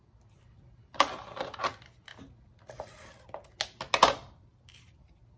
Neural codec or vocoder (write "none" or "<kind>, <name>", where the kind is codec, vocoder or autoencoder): none